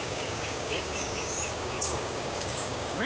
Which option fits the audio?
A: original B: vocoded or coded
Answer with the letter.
B